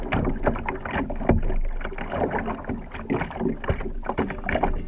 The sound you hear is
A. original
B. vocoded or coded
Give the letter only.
A